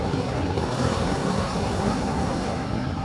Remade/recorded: remade